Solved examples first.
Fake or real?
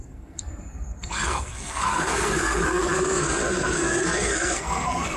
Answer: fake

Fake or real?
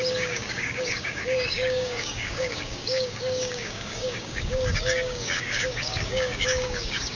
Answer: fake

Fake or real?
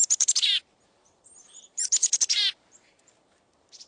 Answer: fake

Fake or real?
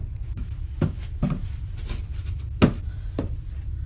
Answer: real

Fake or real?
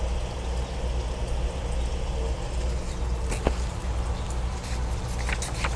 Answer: real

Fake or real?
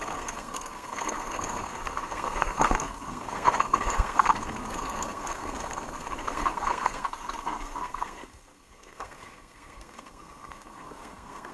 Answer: fake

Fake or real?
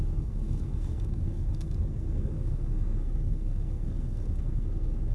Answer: fake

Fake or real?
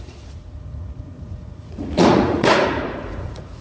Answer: fake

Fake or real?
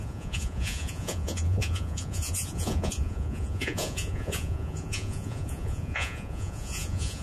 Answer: fake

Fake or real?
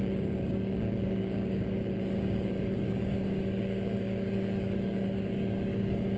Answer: fake